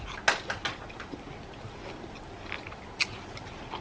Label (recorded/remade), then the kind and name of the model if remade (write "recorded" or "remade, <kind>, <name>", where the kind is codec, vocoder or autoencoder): recorded